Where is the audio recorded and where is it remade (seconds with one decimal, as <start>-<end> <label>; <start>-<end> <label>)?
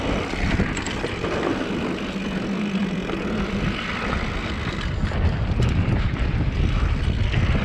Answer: 0.0-2.8 recorded; 2.8-6.7 remade; 6.7-7.6 recorded